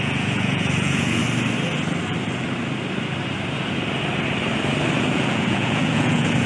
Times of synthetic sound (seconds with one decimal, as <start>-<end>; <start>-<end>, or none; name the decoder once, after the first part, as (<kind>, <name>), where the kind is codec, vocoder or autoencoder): 0.0-1.2 (vocoder, Vocos); 5.0-6.5